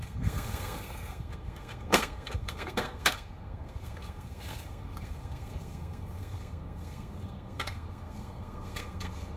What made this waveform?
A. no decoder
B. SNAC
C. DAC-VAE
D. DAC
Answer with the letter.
B